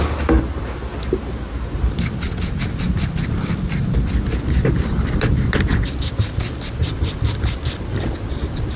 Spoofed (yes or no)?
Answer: no